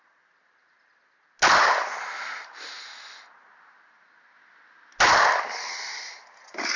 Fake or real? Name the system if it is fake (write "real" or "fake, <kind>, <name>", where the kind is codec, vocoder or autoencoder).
real